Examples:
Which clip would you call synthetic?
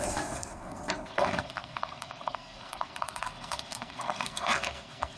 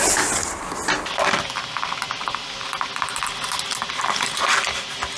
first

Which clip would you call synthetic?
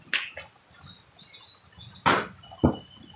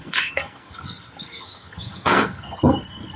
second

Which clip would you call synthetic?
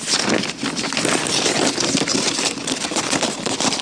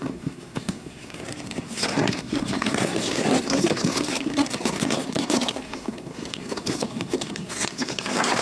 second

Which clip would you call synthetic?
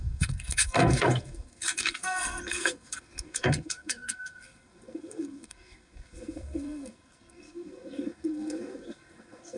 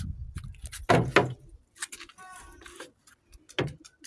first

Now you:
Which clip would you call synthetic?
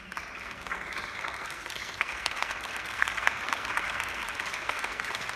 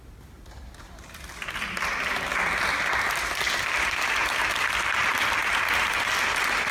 first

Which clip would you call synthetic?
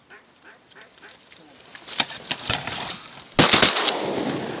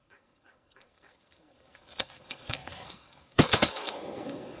second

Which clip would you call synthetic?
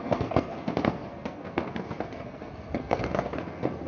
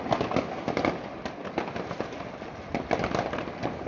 first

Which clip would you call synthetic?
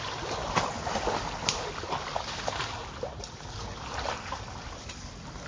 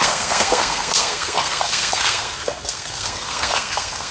second